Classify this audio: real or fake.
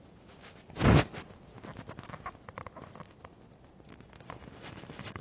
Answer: real